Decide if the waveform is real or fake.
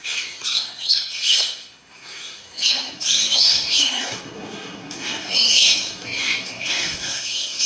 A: fake